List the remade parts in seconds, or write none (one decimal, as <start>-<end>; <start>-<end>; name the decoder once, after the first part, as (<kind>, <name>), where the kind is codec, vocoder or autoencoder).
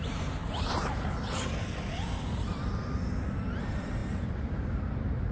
0.0-0.4 (vocoder, BigVGAN v2); 3.6-5.3